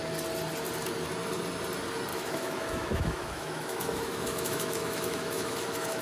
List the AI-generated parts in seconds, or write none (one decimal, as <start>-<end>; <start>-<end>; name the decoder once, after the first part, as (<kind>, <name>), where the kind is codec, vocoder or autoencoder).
2.1-6.0 (autoencoder, DAC-VAE)